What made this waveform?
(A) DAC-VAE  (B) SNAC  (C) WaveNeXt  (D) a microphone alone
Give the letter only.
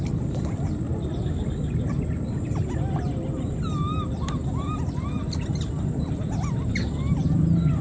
D